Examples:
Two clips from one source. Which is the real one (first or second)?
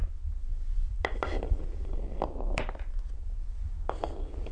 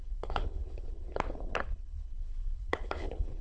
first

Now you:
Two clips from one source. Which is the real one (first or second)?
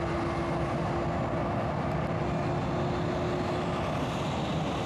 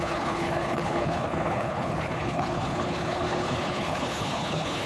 first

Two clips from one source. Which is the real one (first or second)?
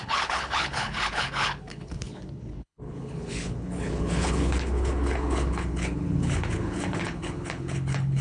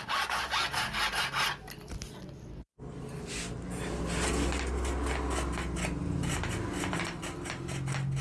second